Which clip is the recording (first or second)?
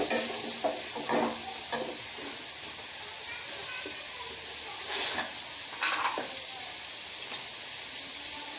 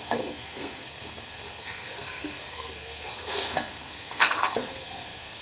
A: first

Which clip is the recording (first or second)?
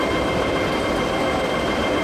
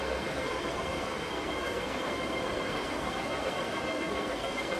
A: first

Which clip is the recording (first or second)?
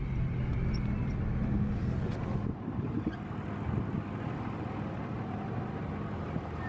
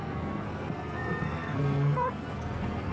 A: first